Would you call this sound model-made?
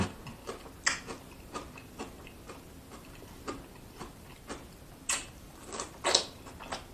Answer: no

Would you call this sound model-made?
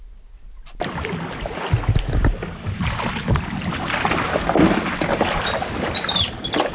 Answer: no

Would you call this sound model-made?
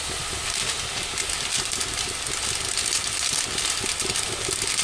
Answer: no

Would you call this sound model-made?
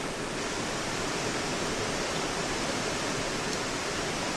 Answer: no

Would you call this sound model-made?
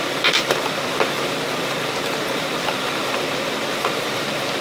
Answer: yes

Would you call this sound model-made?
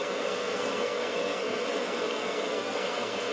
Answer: yes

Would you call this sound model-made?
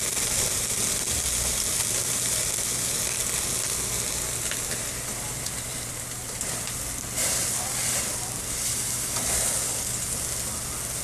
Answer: no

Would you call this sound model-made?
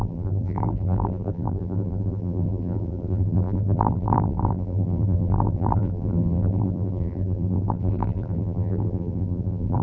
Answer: yes